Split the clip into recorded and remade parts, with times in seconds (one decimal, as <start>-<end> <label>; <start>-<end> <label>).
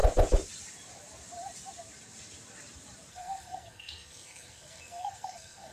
0.0-3.1 recorded; 3.1-5.7 remade